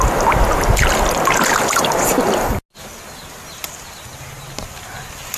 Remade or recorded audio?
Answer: recorded